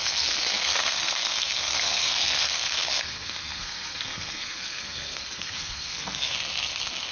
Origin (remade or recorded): remade